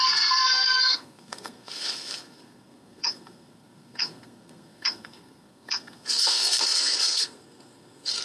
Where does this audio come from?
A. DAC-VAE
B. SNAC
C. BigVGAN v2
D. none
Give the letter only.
B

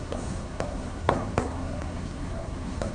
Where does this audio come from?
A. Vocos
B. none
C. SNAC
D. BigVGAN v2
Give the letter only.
C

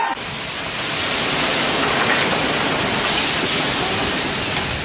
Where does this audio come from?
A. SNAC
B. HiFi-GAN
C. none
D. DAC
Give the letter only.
C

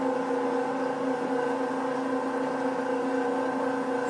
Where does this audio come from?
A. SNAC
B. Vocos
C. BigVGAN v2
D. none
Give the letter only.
D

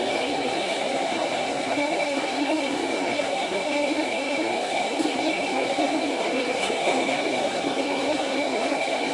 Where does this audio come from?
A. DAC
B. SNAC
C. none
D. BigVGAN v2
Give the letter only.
B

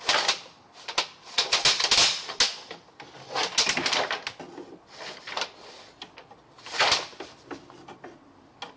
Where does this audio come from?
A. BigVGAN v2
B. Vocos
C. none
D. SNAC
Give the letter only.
C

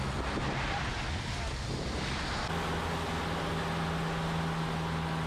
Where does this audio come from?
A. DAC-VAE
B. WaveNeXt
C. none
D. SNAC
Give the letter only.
C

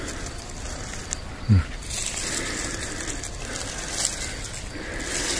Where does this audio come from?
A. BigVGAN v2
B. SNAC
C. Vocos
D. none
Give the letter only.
D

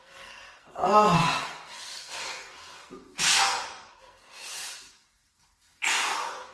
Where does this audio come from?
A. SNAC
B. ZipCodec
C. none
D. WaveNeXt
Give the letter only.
A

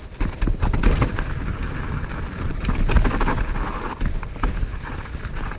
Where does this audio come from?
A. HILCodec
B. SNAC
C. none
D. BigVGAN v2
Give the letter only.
C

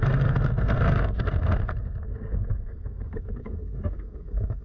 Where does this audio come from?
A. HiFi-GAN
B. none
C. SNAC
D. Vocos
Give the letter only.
C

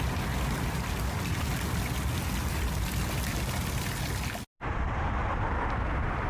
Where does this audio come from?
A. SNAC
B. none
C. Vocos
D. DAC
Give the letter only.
B